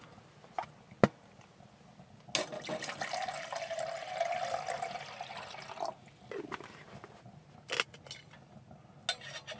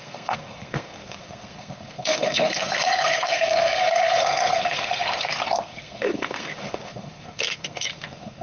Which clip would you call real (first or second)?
first